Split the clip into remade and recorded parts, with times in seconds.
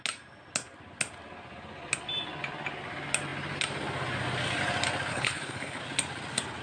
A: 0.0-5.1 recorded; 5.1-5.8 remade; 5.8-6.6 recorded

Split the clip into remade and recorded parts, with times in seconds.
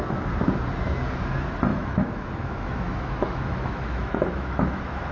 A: 0.0-1.7 recorded; 1.7-5.1 remade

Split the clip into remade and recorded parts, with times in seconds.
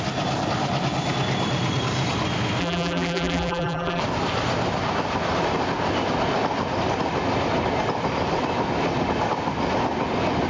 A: 0.0-2.6 recorded; 2.6-4.0 remade; 4.0-10.5 recorded